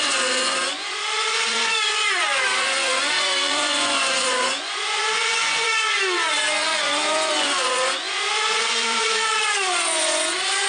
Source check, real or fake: fake